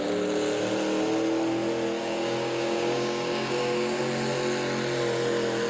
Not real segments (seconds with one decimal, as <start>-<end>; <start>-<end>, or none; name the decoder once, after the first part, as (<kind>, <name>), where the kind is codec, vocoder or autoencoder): 2.0-4.0 (codec, DAC)